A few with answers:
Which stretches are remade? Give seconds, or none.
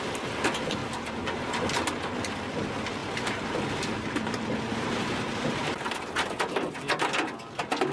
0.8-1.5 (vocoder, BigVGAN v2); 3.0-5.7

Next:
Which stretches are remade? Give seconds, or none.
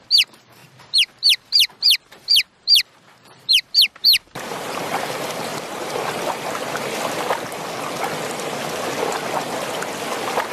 0.0-5.5 (vocoder, BigVGAN v2)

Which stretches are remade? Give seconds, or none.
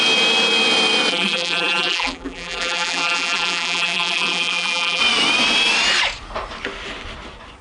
1.1-5.0 (vocoder, BigVGAN v2)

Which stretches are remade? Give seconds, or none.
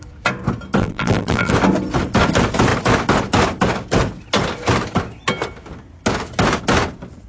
0.8-1.5 (vocoder, BigVGAN v2)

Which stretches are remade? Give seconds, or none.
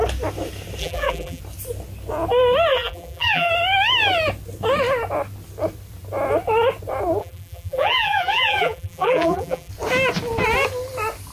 0.8-1.4 (vocoder, BigVGAN v2); 2.7-3.5; 7.2-9.7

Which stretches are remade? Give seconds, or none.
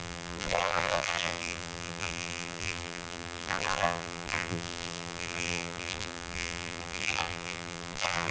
0.0-8.3 (vocoder, BigVGAN v2)